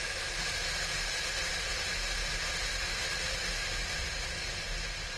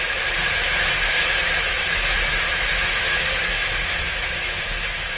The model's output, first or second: second